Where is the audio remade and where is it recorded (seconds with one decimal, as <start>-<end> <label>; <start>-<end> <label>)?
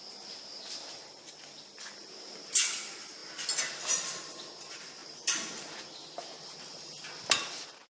0.0-8.0 recorded